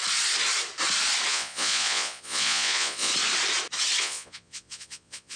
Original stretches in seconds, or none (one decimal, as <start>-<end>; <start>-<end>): 0.0-1.3; 3.1-4.0